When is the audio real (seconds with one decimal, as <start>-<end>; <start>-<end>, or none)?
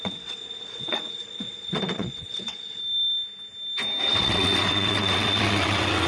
2.8-4.0